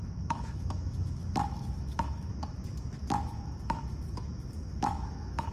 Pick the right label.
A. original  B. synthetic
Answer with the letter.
B